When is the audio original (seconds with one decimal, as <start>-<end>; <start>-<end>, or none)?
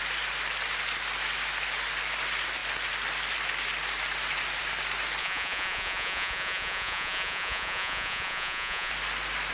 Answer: 0.0-5.2; 8.9-9.5